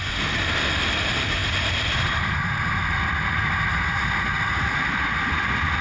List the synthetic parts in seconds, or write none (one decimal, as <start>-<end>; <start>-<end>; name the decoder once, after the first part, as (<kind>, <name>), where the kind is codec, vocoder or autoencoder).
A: none